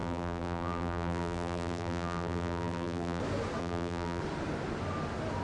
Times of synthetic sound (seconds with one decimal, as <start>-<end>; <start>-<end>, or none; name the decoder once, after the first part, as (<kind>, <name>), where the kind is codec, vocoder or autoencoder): 0.0-3.2 (vocoder, BigVGAN v2); 3.6-4.2